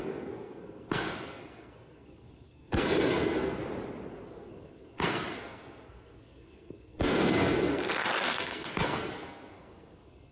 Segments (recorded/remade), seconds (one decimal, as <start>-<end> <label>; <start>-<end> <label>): 0.0-3.6 remade; 3.6-4.3 recorded; 4.3-10.3 remade